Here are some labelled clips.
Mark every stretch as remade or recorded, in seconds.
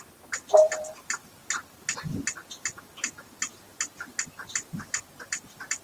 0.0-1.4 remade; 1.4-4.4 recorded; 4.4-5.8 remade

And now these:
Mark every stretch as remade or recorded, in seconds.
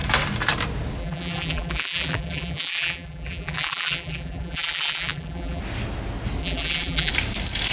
0.0-1.0 recorded; 1.0-5.6 remade; 5.6-6.4 recorded; 6.4-7.1 remade; 7.1-7.7 recorded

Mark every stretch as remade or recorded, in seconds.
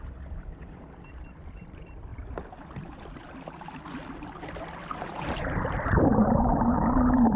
0.0-2.1 remade; 2.1-5.2 recorded; 5.2-7.4 remade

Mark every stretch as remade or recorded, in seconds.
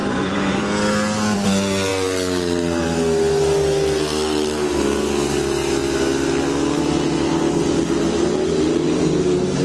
0.0-0.6 remade; 0.6-9.6 recorded